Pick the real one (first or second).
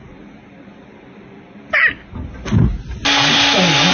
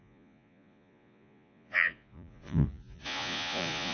first